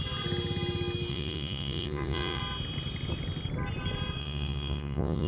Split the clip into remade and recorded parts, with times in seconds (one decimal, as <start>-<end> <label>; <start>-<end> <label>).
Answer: 0.0-1.1 recorded; 1.1-2.4 remade; 2.4-4.2 recorded; 4.2-5.3 remade